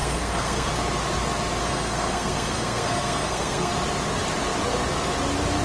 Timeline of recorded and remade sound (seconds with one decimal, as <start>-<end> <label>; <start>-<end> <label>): 0.0-0.7 remade; 0.7-1.6 recorded; 1.6-3.7 remade; 3.7-5.6 recorded

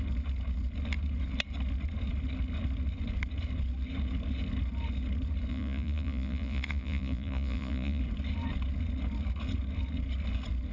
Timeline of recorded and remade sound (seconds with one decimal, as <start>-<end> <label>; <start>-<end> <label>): 0.0-5.5 recorded; 5.5-8.0 remade; 8.0-10.7 recorded

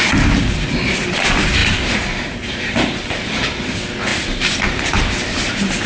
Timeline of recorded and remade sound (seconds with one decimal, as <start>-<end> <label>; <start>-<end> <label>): 0.0-1.6 recorded; 1.6-3.1 remade; 3.1-5.9 recorded

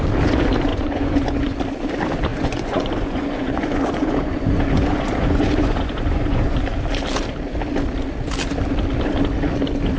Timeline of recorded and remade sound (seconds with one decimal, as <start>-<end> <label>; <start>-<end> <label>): 0.0-0.7 recorded; 0.7-1.6 remade; 1.6-2.3 recorded; 2.3-6.6 remade; 6.6-10.0 recorded

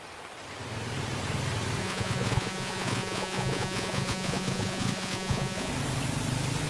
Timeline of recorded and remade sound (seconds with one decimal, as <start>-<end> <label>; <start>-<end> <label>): 0.0-1.8 recorded; 1.8-5.7 remade; 5.7-6.7 recorded

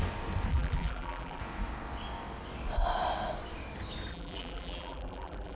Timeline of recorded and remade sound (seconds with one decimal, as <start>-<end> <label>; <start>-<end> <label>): 0.0-0.5 recorded; 0.5-1.4 remade; 1.4-4.1 recorded; 4.1-5.6 remade

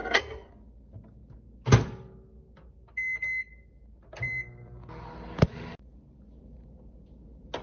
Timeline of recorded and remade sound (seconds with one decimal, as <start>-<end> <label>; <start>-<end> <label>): 0.0-0.5 remade; 0.5-7.6 recorded